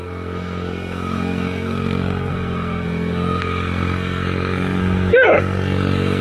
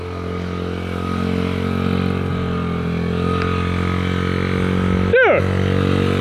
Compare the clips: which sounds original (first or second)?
second